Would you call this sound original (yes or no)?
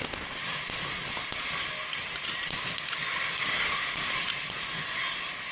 yes